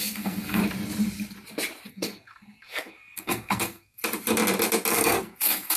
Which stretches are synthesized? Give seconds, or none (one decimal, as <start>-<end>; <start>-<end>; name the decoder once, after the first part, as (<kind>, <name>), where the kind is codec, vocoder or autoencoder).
0.0-0.6 (codec, SNAC); 1.9-4.0; 4.9-5.8